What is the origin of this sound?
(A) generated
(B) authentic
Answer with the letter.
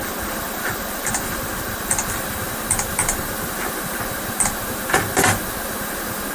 A